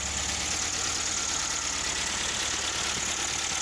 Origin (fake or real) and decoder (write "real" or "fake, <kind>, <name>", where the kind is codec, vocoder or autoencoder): real